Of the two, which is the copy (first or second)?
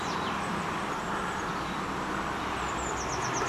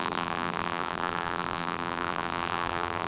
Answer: second